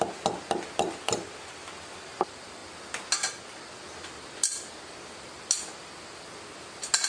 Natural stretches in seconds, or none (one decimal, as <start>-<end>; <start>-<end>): 0.0-7.1